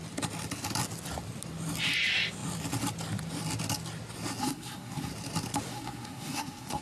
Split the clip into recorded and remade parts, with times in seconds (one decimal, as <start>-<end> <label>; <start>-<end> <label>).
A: 0.0-4.4 recorded; 4.4-5.1 remade; 5.1-5.7 recorded; 5.7-6.8 remade